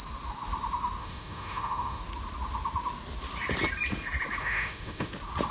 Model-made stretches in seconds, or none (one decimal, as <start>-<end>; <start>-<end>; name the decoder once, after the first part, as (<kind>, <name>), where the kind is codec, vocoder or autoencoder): 1.0-2.0 (autoencoder, DAC-VAE); 4.4-5.1